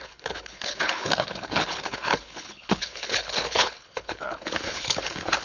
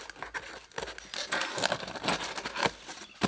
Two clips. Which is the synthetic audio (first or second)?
first